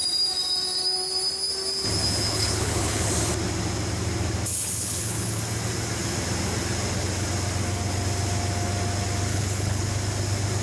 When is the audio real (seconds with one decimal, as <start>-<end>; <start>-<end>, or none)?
0.0-2.3; 3.1-4.5; 5.4-9.3; 9.8-10.6